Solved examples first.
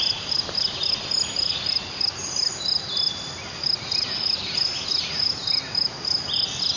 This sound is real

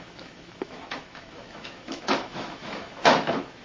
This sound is fake